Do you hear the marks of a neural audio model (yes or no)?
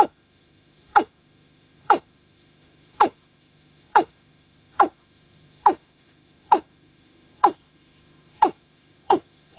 yes